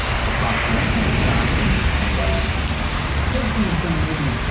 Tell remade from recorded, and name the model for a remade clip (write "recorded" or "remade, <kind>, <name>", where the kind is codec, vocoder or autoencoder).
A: recorded